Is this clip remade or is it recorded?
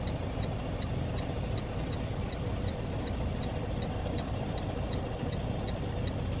recorded